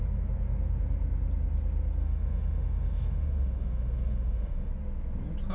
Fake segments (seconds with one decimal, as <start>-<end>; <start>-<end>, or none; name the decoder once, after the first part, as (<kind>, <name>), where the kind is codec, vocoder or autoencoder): 2.0-4.7 (autoencoder, DAC-VAE)